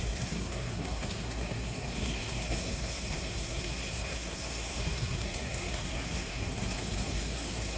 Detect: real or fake fake